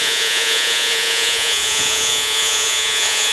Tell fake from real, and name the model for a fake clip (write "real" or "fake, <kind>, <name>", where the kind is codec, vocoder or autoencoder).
fake, vocoder, Vocos